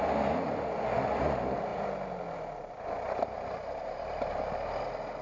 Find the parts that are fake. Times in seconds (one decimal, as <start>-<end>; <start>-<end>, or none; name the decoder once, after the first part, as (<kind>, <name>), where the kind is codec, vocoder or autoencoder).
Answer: none